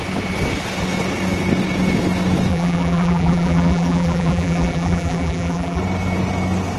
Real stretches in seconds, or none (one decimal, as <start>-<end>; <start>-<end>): 0.0-2.5; 5.8-6.8